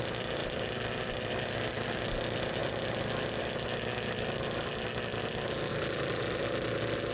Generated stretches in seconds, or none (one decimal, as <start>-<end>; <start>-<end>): 0.4-1.9; 5.7-6.4